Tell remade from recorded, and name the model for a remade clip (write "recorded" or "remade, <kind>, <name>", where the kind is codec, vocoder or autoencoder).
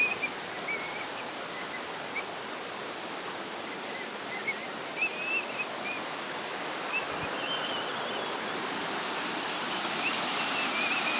recorded